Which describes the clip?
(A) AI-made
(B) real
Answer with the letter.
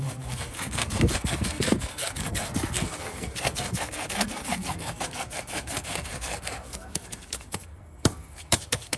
A